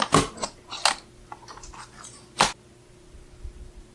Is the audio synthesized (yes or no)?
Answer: no